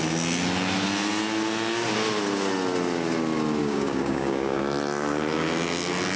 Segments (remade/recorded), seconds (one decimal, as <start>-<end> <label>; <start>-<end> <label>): 0.0-3.6 recorded; 3.6-4.6 remade; 4.6-6.2 recorded